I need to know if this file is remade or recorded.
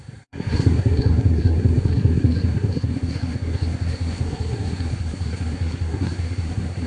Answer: remade